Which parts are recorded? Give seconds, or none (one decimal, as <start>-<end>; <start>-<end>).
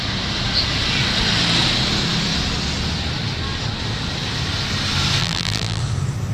0.0-5.2; 5.8-6.3